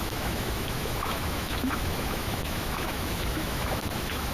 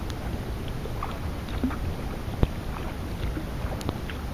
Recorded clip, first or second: second